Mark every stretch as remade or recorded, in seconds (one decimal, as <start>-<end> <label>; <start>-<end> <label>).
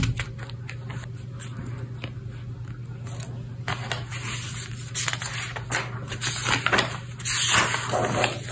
0.0-8.5 recorded